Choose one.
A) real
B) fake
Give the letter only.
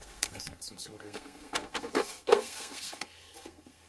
B